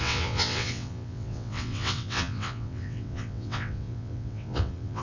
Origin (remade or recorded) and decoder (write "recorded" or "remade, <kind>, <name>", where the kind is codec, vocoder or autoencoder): remade, vocoder, WaveNeXt